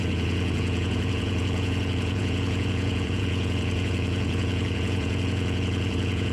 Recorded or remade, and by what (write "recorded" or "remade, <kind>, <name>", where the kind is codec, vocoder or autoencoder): remade, vocoder, Vocos